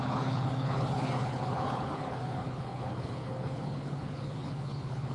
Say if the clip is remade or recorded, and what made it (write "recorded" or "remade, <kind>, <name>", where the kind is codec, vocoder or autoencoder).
remade, codec, HILCodec